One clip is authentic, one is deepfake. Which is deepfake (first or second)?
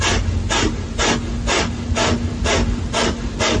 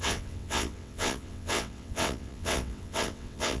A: second